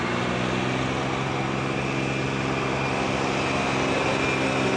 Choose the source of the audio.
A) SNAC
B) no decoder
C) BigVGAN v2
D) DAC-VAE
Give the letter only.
B